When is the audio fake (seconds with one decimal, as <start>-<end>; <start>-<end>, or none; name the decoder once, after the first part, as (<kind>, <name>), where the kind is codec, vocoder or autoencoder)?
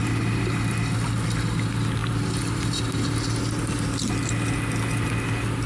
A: none